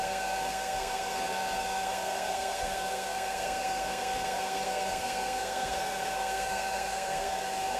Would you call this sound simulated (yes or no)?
yes